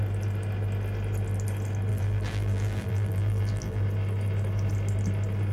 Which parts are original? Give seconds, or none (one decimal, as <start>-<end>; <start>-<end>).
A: 0.0-1.9; 3.8-5.5